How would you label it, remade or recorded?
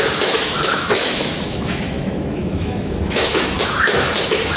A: remade